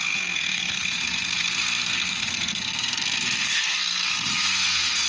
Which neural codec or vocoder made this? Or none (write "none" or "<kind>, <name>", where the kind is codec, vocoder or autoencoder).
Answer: codec, SNAC